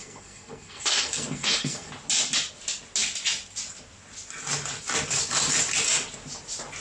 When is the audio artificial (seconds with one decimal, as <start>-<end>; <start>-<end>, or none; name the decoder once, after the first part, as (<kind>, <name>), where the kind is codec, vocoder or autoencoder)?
0.0-1.9 (codec, SNAC)